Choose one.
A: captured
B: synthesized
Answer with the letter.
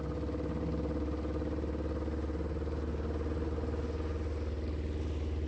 A